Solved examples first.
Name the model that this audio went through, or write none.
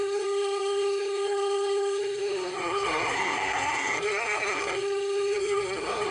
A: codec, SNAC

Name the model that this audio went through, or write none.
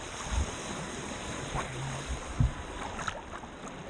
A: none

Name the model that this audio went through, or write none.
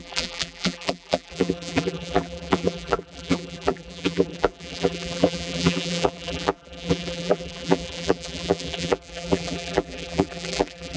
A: vocoder, BigVGAN v2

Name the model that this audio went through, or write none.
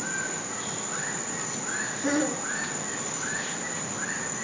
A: none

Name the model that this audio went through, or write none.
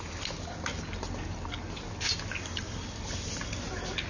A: none